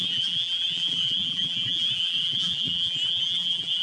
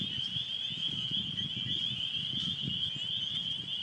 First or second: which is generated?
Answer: first